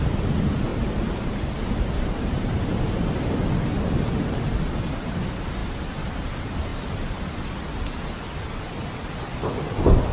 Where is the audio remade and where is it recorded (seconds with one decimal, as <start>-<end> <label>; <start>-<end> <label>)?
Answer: 0.0-0.7 recorded; 0.7-2.5 remade; 2.5-10.1 recorded